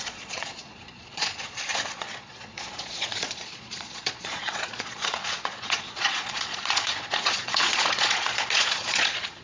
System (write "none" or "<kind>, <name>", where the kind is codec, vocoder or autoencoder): vocoder, Vocos